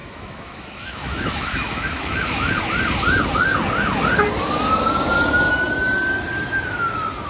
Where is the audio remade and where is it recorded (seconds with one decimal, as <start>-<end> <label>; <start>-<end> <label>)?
0.0-2.6 remade; 2.6-7.3 recorded

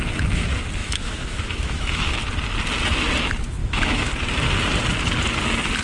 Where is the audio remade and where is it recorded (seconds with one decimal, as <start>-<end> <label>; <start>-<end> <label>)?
0.0-0.8 recorded; 0.8-2.2 remade; 2.2-3.6 recorded; 3.6-4.1 remade; 4.1-5.8 recorded

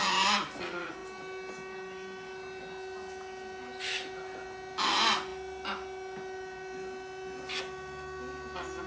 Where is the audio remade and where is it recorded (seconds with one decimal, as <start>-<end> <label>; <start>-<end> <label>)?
0.0-8.9 recorded

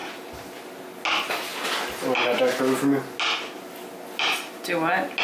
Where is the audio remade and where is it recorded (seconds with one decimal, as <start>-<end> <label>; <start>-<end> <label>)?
0.0-5.2 recorded